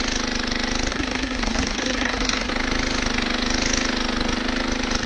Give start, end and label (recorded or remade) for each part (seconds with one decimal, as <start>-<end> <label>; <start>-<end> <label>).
0.0-0.9 recorded; 0.9-2.5 remade; 2.5-5.1 recorded